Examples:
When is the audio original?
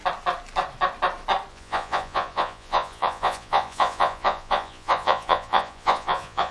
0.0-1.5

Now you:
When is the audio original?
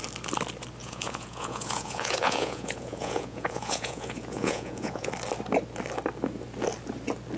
0.0-0.8; 5.1-7.4